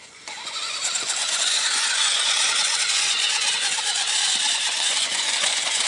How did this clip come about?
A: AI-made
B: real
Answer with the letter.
A